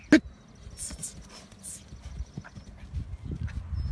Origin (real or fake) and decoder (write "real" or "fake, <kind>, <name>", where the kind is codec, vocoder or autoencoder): real